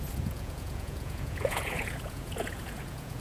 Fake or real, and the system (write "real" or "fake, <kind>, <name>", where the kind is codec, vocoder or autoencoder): fake, vocoder, Vocos